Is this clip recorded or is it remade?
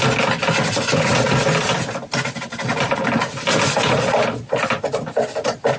recorded